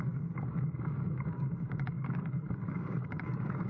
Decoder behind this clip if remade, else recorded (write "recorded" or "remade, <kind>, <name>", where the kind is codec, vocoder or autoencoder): remade, codec, DAC